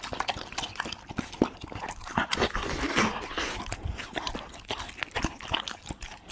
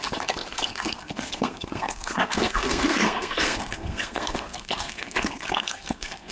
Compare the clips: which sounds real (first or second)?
first